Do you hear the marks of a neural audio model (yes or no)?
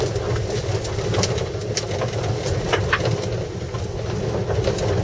no